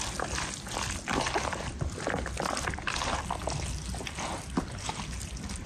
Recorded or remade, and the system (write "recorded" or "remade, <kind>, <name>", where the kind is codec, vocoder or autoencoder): recorded